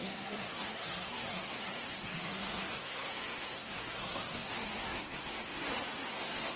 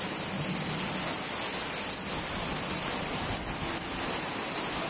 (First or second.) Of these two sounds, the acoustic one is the second